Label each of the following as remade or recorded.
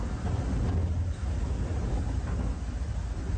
recorded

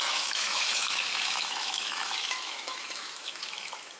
remade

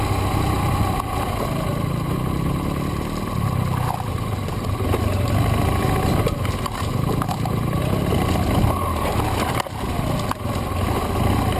recorded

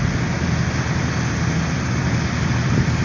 recorded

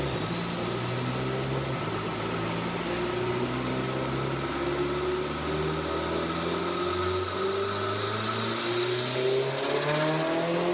recorded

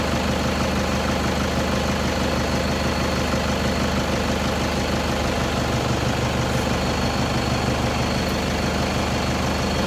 recorded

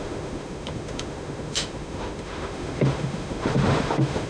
remade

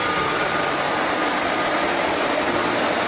recorded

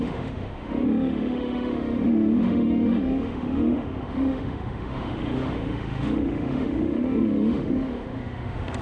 remade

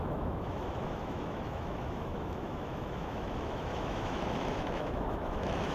remade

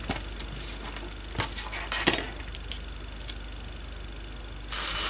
recorded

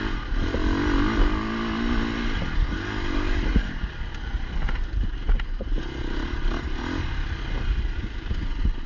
recorded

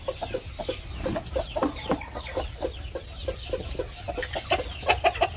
recorded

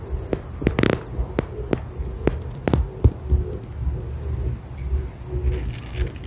recorded